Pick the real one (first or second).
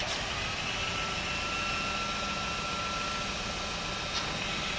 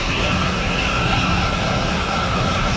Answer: first